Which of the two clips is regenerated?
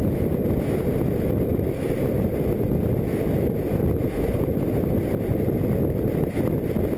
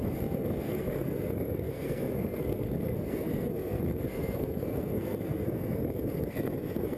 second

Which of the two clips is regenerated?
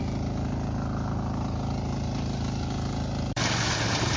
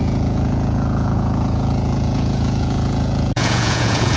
second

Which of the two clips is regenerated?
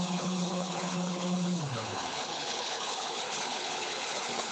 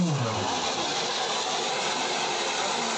first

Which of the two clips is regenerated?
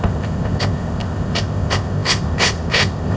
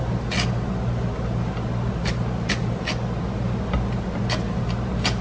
first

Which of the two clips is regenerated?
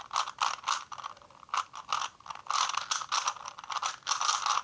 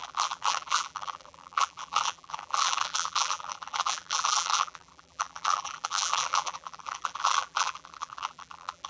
second